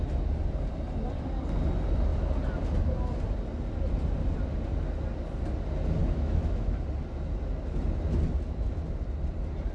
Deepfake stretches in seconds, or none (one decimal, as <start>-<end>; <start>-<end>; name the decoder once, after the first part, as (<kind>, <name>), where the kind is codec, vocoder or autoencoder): 6.0-6.8 (autoencoder, DAC-VAE)